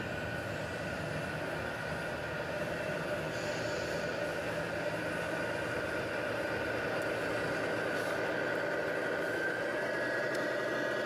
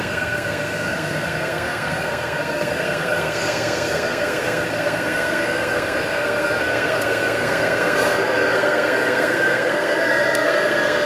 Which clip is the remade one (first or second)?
second